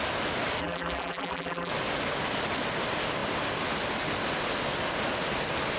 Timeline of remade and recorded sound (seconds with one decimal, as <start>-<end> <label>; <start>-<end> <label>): 0.0-0.6 recorded; 0.6-1.7 remade; 1.7-5.8 recorded